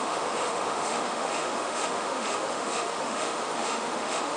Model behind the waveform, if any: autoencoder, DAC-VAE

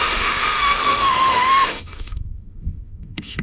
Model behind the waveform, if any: autoencoder, DAC-VAE